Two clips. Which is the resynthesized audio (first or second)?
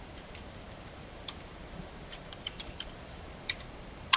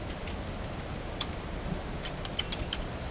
first